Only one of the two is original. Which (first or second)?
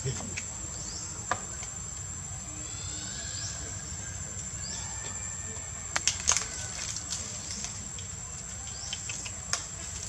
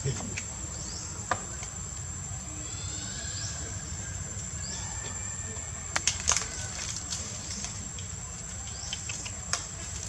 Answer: first